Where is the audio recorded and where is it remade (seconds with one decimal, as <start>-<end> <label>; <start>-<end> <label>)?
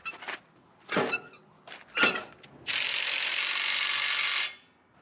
0.0-5.0 recorded